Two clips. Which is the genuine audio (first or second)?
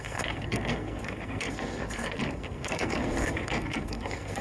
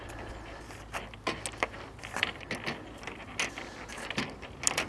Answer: second